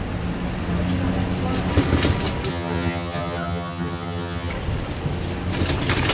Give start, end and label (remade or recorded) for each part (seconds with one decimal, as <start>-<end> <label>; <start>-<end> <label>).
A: 0.0-2.5 recorded; 2.5-4.5 remade; 4.5-6.1 recorded